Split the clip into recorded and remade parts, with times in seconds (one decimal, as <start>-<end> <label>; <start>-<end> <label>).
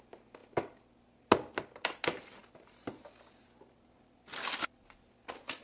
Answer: 0.0-5.6 recorded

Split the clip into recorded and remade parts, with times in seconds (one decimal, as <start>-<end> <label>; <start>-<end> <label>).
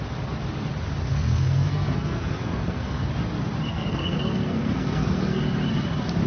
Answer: 0.0-1.1 recorded; 1.1-3.1 remade; 3.1-3.7 recorded; 3.7-5.4 remade; 5.4-6.3 recorded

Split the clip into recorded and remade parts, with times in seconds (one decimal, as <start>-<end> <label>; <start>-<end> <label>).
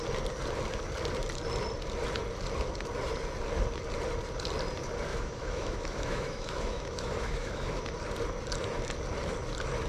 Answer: 0.0-5.1 recorded; 5.1-7.8 remade; 7.8-9.9 recorded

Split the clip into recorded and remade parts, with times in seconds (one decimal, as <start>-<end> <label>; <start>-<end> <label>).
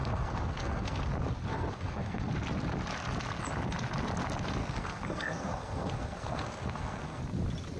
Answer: 0.0-1.0 remade; 1.0-1.5 recorded; 1.5-2.3 remade; 2.3-4.6 recorded; 4.6-7.2 remade; 7.2-7.8 recorded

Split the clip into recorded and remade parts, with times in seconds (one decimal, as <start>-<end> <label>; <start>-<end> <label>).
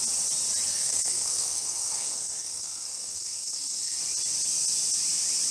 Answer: 0.0-0.7 recorded; 0.7-4.0 remade; 4.0-5.5 recorded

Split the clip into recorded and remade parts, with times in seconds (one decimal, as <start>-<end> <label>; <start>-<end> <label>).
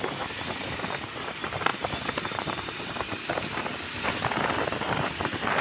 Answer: 0.0-1.7 recorded; 1.7-3.4 remade; 3.4-5.6 recorded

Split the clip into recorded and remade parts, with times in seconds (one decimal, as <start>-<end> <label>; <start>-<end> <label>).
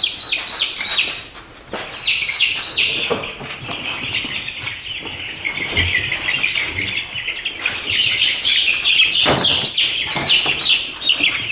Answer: 0.0-0.9 recorded; 0.9-1.6 remade; 1.6-11.5 recorded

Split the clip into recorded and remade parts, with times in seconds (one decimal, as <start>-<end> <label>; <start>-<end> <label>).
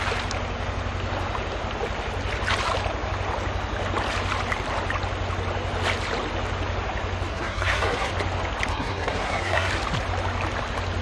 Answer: 0.0-7.3 recorded; 7.3-8.1 remade; 8.1-8.7 recorded; 8.7-9.7 remade; 9.7-11.0 recorded